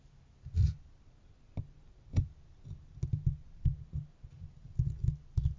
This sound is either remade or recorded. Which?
recorded